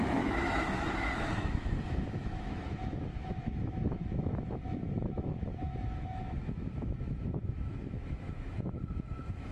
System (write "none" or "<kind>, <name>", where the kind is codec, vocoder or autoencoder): autoencoder, DAC-VAE